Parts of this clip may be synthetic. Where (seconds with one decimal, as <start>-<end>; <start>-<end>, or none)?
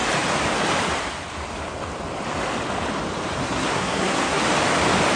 3.4-4.4